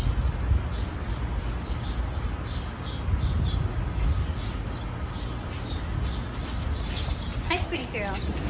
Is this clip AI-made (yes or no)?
no